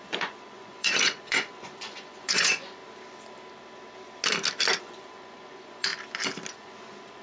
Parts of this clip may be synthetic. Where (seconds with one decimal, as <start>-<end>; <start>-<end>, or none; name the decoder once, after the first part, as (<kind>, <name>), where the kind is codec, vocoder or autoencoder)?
0.0-2.8 (vocoder, Vocos); 4.8-5.9; 6.5-7.2